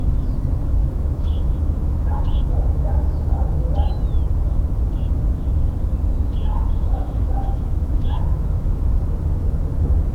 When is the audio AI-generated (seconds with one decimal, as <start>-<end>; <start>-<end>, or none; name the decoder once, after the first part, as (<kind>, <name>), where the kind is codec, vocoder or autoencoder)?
0.8-3.7 (autoencoder, DAC-VAE); 6.5-8.8